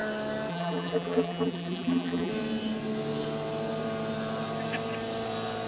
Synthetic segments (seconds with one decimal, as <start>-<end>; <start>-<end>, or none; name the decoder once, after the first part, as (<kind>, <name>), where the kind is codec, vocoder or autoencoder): 0.5-2.3 (vocoder, BigVGAN v2)